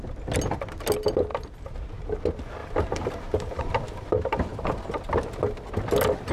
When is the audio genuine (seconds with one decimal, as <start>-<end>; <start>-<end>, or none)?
0.0-1.3; 2.2-2.6; 3.6-6.3